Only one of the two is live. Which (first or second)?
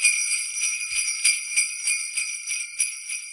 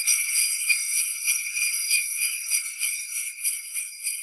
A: first